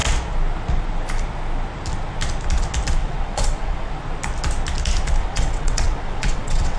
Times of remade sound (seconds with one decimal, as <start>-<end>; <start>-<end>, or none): 3.0-3.9; 5.2-6.8